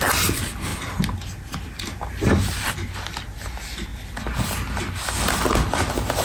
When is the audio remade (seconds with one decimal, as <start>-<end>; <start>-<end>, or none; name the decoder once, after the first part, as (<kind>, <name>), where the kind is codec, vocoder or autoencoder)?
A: none